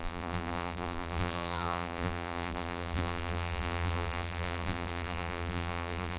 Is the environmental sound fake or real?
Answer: fake